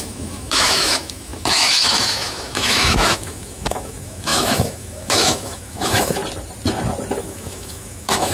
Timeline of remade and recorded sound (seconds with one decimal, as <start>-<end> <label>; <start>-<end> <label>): 0.0-6.2 remade; 6.2-7.2 recorded; 7.2-8.3 remade